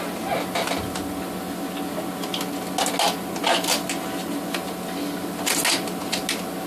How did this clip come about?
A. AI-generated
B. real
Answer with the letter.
B